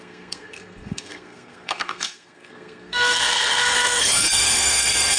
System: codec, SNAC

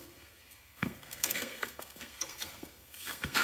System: codec, SNAC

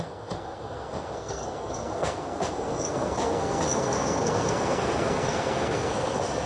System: codec, SNAC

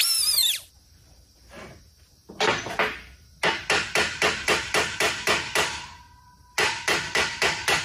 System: none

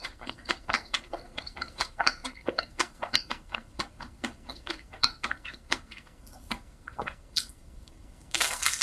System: codec, SNAC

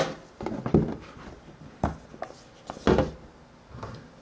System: none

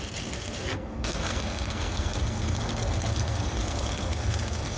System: codec, SNAC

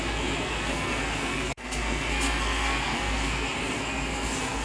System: codec, SNAC